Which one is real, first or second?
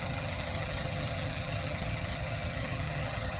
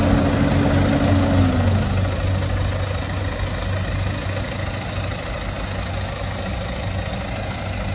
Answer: second